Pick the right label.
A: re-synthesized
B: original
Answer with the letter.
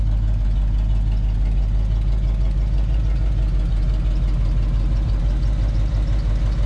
B